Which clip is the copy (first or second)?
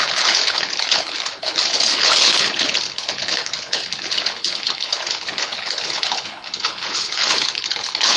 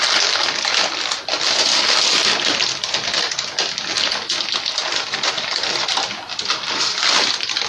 first